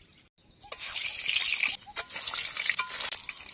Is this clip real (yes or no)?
yes